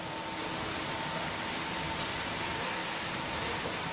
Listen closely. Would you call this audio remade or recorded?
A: recorded